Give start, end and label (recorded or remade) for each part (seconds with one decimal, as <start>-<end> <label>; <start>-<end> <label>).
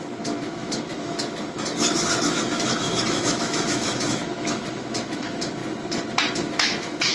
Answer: 0.0-5.6 remade; 5.6-6.3 recorded; 6.3-7.1 remade